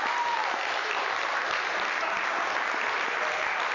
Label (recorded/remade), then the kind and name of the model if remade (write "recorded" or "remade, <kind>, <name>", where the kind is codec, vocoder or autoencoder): recorded